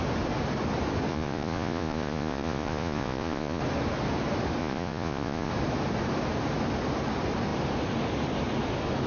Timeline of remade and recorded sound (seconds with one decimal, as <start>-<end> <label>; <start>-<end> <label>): 0.0-1.1 recorded; 1.1-3.6 remade; 3.6-4.6 recorded; 4.6-5.5 remade; 5.5-9.1 recorded